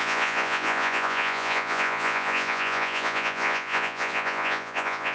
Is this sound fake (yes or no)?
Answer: yes